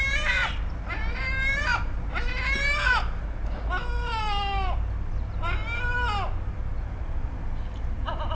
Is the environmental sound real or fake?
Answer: real